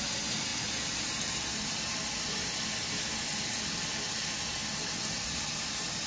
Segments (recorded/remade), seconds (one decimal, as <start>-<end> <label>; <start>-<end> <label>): 0.0-6.1 recorded